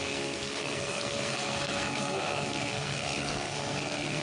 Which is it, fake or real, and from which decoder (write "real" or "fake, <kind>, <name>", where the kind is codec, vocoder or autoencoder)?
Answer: fake, codec, SNAC